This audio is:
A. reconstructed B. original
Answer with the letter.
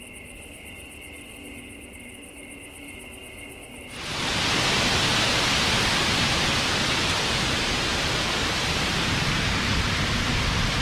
B